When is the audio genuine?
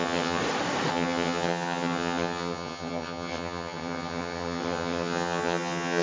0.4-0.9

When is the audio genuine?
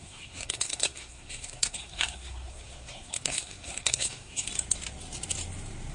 4.5-5.9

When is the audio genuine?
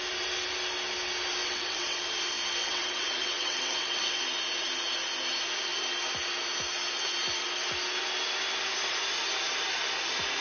0.0-1.4; 2.0-2.6; 4.2-10.4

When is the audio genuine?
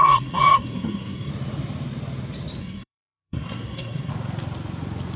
1.3-2.6; 4.1-5.2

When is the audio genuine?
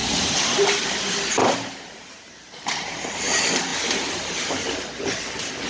0.0-1.4; 3.2-3.7; 4.7-5.7